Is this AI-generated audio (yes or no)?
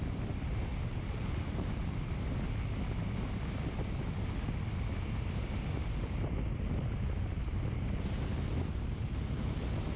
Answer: no